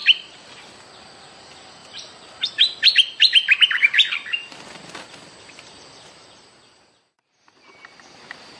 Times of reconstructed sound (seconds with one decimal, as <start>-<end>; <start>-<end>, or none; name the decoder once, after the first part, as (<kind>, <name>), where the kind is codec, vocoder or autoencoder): 1.2-8.6 (vocoder, BigVGAN v2)